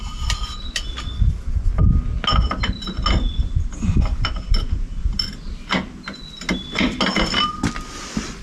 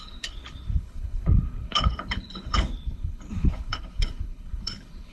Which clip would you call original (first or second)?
first